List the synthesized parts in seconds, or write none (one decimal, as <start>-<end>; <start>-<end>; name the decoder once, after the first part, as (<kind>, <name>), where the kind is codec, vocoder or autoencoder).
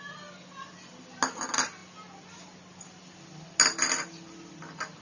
none